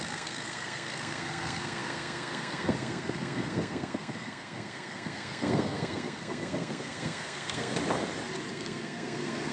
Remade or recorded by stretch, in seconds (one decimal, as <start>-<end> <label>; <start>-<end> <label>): 0.0-7.7 remade; 7.7-8.5 recorded; 8.5-9.5 remade